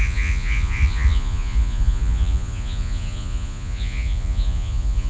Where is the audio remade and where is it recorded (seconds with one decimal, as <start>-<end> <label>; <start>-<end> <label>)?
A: 0.0-5.1 remade